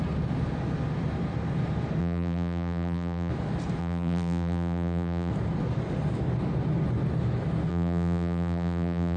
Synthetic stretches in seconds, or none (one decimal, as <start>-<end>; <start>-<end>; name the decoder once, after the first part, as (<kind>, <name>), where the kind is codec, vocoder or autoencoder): 2.0-3.3 (vocoder, BigVGAN v2); 3.8-5.3; 7.7-9.2